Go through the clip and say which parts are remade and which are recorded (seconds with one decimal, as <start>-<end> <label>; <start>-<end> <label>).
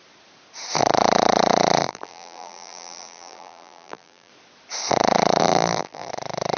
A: 0.0-1.8 recorded; 1.8-4.3 remade; 4.3-5.4 recorded; 5.4-6.1 remade; 6.1-6.6 recorded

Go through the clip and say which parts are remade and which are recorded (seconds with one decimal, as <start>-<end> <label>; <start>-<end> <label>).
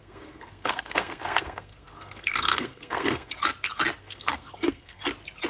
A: 0.0-3.3 remade; 3.3-4.0 recorded; 4.0-5.0 remade; 5.0-5.5 recorded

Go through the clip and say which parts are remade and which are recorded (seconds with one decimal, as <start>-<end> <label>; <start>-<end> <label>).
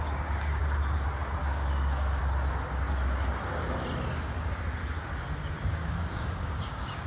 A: 0.0-0.6 remade; 0.6-1.4 recorded; 1.4-2.2 remade; 2.2-5.6 recorded; 5.6-7.1 remade